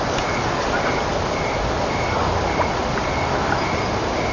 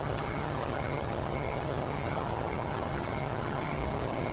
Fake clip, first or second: second